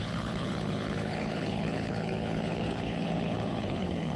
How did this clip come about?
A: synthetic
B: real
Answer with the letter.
A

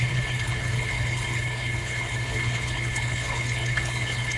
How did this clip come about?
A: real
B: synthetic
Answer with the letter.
B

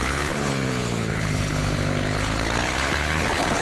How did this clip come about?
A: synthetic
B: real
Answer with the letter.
A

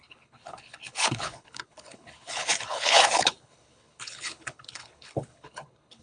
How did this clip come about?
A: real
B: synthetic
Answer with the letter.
B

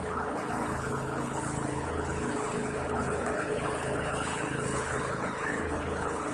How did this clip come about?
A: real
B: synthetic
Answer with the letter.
B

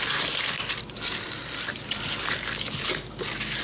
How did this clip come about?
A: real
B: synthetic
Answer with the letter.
A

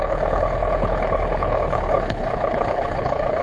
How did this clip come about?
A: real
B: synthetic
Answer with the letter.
B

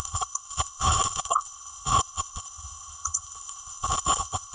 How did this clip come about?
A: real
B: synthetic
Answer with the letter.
B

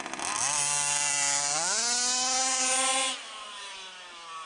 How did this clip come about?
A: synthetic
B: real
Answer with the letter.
B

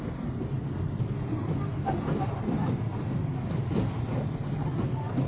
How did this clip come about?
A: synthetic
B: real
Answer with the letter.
B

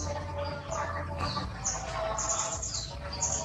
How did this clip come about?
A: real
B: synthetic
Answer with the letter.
A